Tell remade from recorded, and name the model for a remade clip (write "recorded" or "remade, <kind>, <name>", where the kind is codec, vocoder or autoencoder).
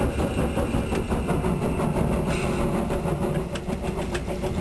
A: recorded